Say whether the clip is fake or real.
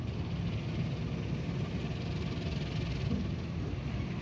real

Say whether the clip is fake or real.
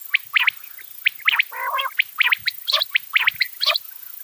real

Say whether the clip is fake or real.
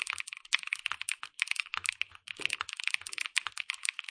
real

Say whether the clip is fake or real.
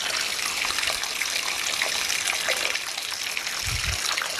real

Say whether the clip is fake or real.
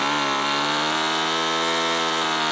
real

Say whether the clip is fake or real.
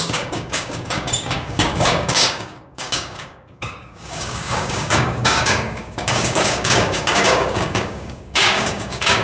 fake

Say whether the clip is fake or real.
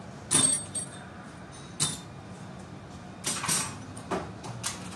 real